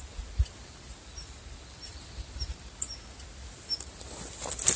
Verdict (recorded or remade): recorded